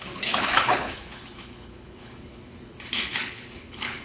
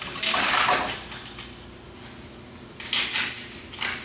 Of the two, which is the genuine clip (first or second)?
second